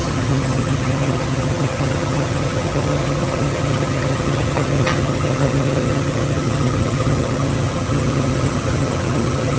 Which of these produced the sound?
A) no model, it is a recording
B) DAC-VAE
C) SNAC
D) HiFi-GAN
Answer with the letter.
D